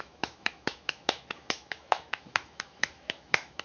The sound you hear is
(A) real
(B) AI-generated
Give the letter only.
B